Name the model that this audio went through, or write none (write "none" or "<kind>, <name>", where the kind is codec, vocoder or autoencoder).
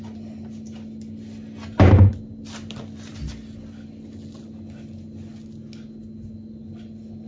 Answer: none